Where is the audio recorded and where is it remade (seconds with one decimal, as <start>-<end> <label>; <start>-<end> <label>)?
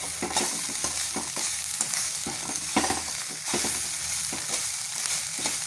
0.0-0.8 recorded; 0.8-3.4 remade; 3.4-5.7 recorded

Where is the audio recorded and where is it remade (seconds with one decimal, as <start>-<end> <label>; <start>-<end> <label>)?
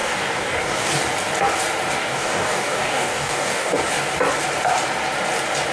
0.0-0.9 remade; 0.9-2.0 recorded; 2.0-3.8 remade; 3.8-5.7 recorded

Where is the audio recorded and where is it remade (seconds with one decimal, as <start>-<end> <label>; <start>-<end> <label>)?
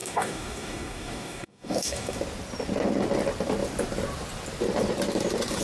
0.0-2.2 remade; 2.2-5.6 recorded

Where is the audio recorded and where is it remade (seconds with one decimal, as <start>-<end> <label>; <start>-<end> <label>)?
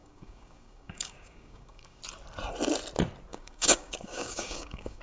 0.0-2.0 remade; 2.0-3.3 recorded; 3.3-5.0 remade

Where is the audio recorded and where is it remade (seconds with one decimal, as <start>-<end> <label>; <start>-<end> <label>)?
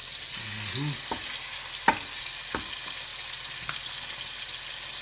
0.0-5.0 recorded